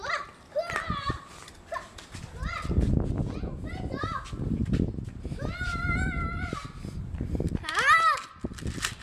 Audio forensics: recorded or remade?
recorded